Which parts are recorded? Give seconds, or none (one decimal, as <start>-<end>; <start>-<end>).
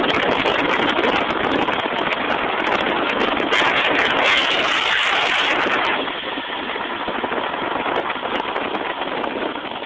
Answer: 0.0-4.4; 6.1-9.9